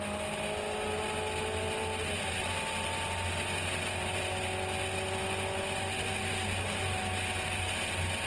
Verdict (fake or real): real